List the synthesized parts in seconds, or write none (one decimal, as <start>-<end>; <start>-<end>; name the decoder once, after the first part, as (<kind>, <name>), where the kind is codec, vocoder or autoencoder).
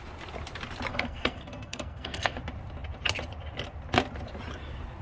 0.9-2.4 (codec, SNAC)